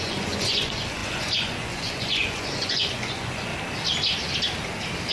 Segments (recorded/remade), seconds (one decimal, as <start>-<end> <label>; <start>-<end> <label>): 0.0-3.5 remade; 3.5-5.1 recorded